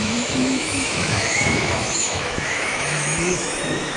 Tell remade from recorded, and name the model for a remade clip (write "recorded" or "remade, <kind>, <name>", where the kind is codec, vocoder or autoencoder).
remade, autoencoder, DAC-VAE